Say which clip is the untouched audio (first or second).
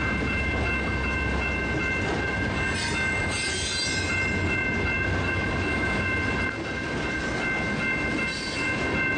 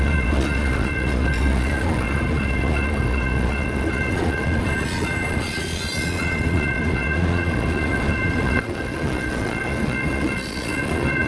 first